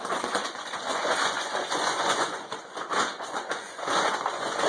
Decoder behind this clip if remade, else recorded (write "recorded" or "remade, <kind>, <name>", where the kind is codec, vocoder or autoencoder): remade, vocoder, Vocos